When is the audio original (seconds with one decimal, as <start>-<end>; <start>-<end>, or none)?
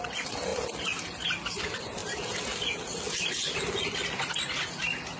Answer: 0.0-5.2